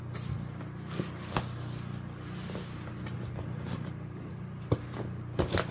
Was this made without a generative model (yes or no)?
yes